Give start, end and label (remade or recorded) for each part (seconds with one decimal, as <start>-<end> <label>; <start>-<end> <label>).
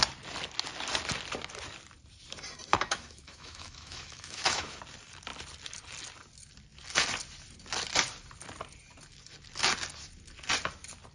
0.0-2.7 recorded; 2.7-4.8 remade; 4.8-11.1 recorded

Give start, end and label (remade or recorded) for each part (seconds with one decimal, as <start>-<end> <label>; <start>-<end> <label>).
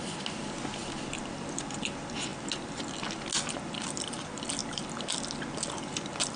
0.0-6.4 recorded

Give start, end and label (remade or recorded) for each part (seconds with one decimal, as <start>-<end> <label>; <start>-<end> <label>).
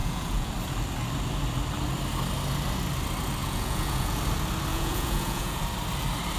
0.0-0.5 remade; 0.5-3.4 recorded; 3.4-4.2 remade; 4.2-4.7 recorded; 4.7-5.6 remade; 5.6-6.4 recorded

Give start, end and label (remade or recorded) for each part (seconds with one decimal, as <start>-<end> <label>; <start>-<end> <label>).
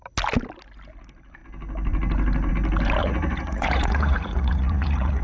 0.0-3.0 recorded; 3.0-5.2 remade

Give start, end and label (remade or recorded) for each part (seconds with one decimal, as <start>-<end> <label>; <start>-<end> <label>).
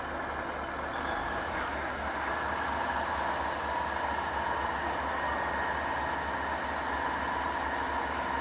0.0-1.5 recorded; 1.5-2.3 remade; 2.3-8.4 recorded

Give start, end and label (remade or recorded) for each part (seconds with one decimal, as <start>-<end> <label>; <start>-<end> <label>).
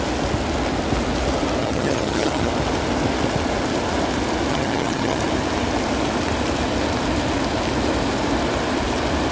0.0-1.6 recorded; 1.6-2.5 remade; 2.5-4.5 recorded; 4.5-5.2 remade; 5.2-9.3 recorded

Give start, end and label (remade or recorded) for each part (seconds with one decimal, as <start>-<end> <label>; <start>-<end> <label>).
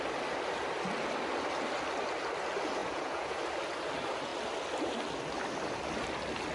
0.0-2.8 recorded; 2.8-3.4 remade; 3.4-6.5 recorded